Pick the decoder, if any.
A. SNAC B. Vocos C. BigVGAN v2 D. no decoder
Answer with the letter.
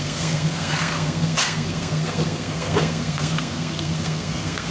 A